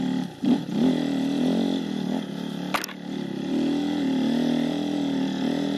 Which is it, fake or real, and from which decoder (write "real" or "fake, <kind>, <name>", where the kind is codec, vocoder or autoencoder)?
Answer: real